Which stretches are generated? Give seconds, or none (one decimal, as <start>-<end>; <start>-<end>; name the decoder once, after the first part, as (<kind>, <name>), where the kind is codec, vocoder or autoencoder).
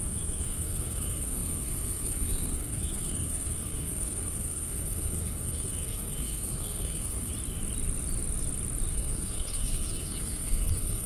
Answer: 0.0-7.3 (codec, SNAC); 8.9-11.1